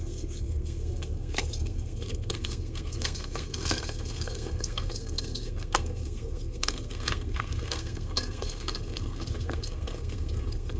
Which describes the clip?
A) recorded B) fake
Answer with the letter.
B